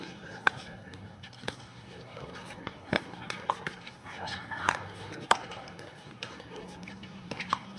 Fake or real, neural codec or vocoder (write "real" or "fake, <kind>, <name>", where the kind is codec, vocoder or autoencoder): fake, codec, SNAC